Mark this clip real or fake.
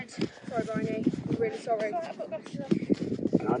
real